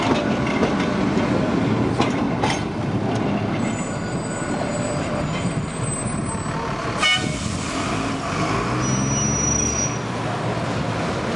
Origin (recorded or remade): recorded